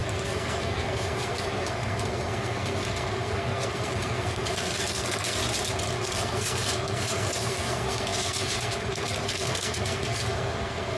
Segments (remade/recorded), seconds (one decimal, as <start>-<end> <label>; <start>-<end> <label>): 0.0-5.4 remade; 5.4-6.0 recorded; 6.0-11.0 remade